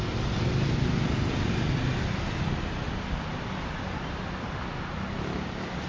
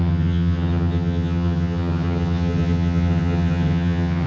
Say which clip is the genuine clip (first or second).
first